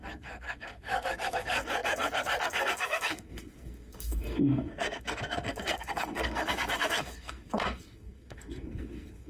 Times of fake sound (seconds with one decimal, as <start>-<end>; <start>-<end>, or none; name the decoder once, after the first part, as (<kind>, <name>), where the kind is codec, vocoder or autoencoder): 0.0-9.3 (codec, SNAC)